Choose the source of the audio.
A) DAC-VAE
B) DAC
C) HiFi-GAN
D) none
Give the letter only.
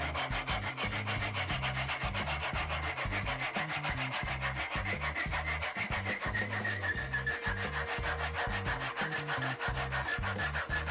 D